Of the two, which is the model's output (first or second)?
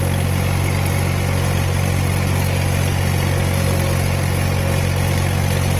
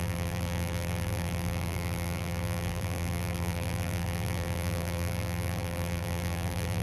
second